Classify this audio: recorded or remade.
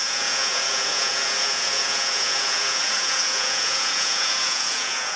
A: remade